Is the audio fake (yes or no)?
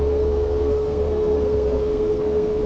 yes